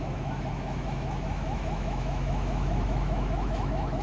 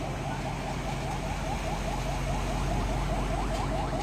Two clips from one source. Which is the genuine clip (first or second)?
second